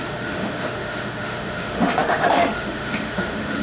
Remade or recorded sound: remade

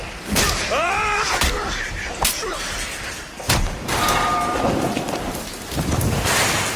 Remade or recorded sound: remade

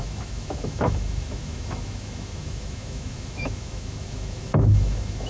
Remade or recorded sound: remade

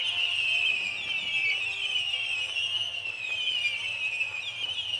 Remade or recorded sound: recorded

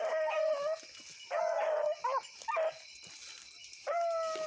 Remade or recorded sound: recorded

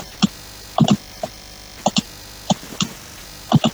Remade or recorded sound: recorded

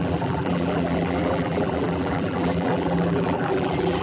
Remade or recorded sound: remade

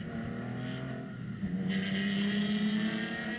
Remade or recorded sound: recorded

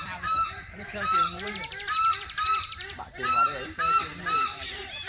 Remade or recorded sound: remade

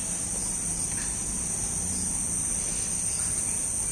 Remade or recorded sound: recorded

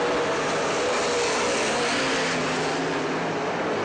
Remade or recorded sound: recorded